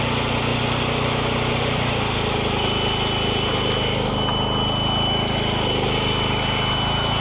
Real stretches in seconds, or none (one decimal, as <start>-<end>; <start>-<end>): 0.0-7.2